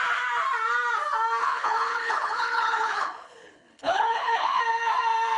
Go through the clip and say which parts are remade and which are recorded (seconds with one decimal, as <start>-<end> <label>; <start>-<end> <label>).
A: 0.0-1.4 recorded; 1.4-4.6 remade; 4.6-5.4 recorded